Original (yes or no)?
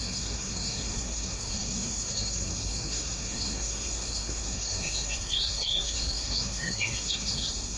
no